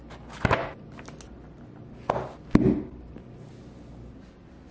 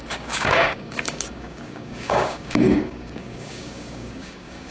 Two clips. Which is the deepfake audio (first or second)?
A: second